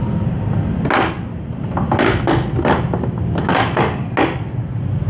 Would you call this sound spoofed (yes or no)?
no